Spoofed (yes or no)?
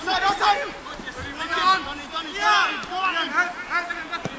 no